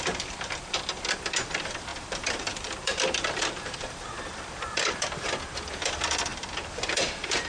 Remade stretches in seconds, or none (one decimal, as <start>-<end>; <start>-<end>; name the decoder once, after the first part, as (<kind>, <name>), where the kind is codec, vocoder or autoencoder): 0.0-6.3 (vocoder, BigVGAN v2); 6.9-7.5